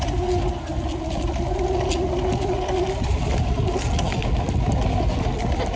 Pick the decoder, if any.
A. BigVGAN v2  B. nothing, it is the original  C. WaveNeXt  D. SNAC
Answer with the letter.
B